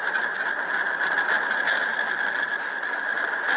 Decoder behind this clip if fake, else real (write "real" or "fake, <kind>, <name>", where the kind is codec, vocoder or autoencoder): real